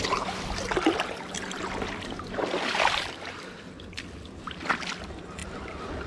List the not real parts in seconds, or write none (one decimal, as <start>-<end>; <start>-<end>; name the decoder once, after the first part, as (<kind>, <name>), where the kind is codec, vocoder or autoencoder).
none